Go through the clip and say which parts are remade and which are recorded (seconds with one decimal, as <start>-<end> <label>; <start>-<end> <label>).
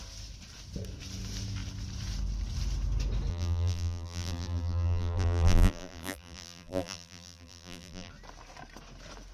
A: 0.0-3.3 recorded; 3.3-8.1 remade; 8.1-9.3 recorded